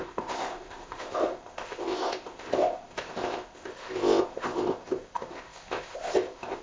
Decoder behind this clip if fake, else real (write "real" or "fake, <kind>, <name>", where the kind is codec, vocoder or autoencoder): fake, codec, ZipCodec